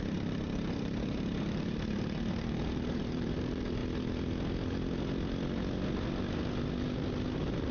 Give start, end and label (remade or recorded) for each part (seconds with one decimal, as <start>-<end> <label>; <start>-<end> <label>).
0.0-3.8 remade; 3.8-7.7 recorded